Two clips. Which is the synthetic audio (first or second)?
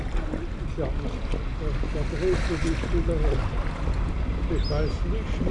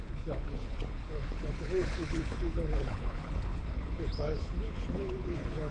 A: second